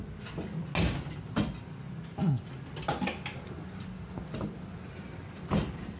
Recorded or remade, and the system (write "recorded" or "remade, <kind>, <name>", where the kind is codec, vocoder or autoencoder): recorded